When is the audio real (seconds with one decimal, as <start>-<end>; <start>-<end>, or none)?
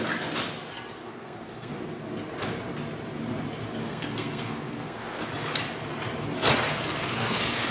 0.0-1.0; 1.7-3.8; 5.3-6.7